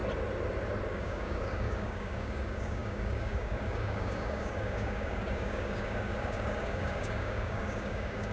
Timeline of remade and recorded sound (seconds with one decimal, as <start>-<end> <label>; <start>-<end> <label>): 0.0-0.9 recorded; 0.9-8.3 remade